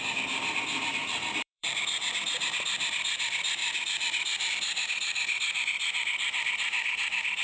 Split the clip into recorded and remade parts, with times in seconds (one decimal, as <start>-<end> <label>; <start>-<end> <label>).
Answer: 0.0-3.6 remade; 3.6-4.5 recorded; 4.5-7.4 remade